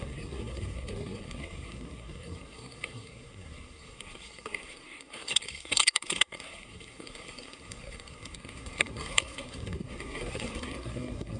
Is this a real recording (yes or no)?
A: no